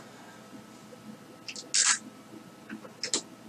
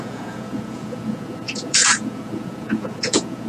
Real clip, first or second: first